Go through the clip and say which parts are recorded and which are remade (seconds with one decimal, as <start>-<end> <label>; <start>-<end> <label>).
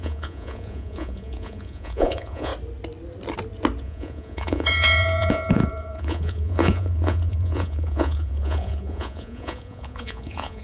0.0-2.5 remade; 2.5-3.8 recorded; 3.8-10.6 remade